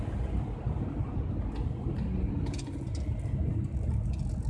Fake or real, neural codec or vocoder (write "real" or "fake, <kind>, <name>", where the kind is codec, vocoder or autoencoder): real